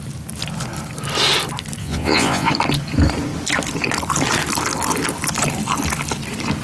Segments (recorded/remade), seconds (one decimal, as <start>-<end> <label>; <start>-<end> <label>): 0.0-1.8 recorded; 1.8-2.5 remade; 2.5-6.6 recorded